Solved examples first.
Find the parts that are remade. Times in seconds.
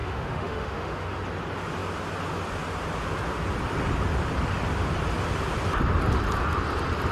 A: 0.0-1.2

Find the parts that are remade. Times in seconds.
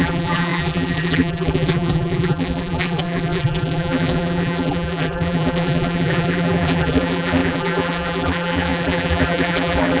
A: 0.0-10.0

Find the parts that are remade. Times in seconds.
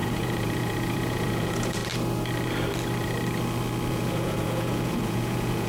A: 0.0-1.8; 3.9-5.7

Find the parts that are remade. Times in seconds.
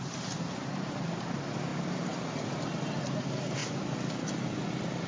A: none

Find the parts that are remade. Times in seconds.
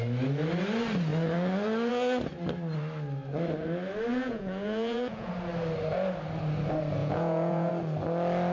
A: 4.1-5.3; 7.0-7.7